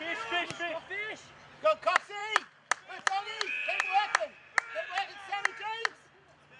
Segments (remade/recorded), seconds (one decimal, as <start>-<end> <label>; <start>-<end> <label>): 0.0-6.6 recorded